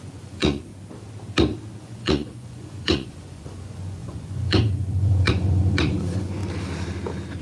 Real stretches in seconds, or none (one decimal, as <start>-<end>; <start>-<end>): 0.7-1.8; 6.4-7.4